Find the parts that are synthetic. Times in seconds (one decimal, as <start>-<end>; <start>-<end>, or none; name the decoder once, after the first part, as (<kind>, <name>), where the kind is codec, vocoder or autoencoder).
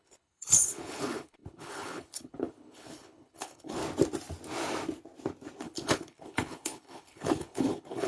0.0-3.8 (codec, HILCodec); 5.6-8.1